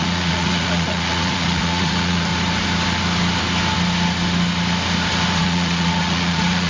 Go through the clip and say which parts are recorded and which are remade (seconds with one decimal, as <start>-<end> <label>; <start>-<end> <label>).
0.0-2.3 remade; 2.3-5.4 recorded; 5.4-6.7 remade